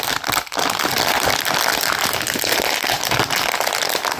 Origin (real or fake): real